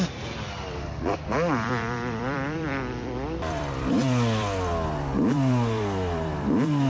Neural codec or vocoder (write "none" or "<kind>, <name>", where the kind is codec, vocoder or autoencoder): vocoder, BigVGAN v2